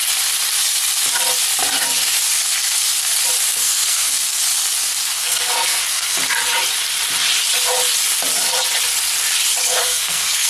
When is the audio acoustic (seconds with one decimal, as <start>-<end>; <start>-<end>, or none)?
0.0-3.5; 4.4-5.2; 6.2-9.8